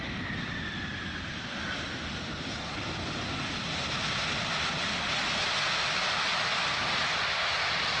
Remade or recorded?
recorded